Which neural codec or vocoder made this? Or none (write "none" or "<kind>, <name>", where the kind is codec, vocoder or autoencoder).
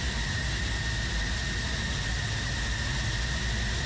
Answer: none